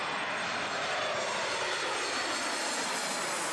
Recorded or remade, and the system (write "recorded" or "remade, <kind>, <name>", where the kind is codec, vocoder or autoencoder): recorded